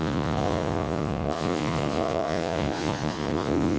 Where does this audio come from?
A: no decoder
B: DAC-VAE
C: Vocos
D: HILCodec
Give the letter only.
C